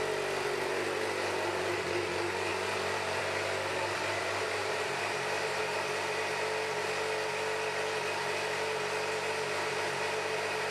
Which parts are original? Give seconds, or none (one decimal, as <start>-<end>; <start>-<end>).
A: 0.0-4.6; 5.6-10.7